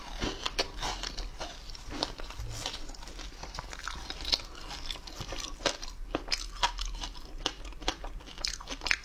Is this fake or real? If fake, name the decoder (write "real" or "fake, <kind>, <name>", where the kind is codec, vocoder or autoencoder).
real